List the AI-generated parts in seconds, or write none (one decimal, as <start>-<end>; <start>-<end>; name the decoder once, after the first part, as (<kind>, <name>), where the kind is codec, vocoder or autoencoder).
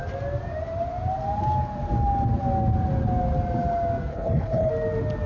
4.1-4.7 (codec, HILCodec)